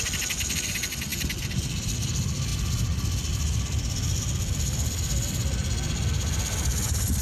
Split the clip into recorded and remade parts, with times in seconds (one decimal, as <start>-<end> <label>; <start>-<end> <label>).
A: 0.0-7.2 recorded

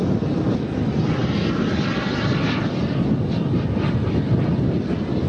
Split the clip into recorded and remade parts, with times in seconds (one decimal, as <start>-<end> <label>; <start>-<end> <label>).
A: 0.0-5.3 recorded

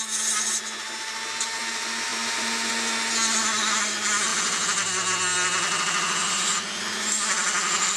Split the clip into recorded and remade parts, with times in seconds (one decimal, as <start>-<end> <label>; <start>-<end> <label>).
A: 0.0-8.0 recorded

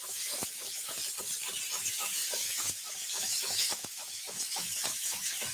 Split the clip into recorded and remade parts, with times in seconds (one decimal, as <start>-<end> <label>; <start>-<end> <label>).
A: 0.0-1.0 remade; 1.0-1.7 recorded; 1.7-5.5 remade